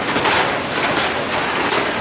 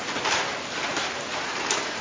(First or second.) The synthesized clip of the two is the second